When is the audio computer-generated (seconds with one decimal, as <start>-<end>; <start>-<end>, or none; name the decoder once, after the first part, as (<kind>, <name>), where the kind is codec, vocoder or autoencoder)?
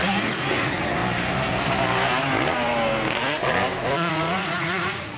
0.0-1.0 (vocoder, Vocos); 4.1-5.2